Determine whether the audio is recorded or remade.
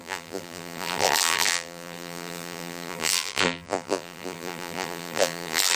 remade